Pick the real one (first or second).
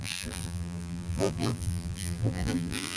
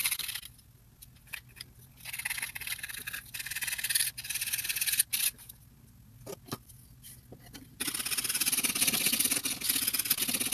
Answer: second